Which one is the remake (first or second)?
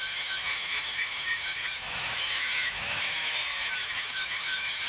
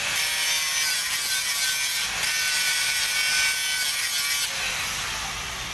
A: first